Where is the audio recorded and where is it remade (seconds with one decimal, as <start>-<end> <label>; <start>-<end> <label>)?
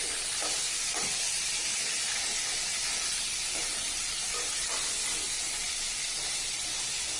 0.0-7.2 recorded